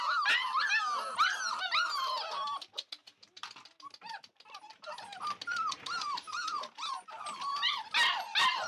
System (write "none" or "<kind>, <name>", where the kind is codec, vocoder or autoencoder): none